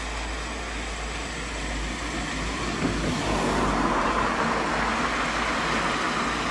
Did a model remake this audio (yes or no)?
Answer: no